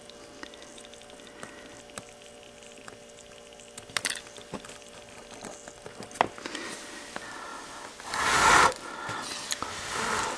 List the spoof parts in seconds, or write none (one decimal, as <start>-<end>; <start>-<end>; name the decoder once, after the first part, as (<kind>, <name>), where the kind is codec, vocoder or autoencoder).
none